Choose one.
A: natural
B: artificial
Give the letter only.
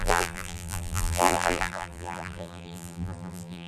B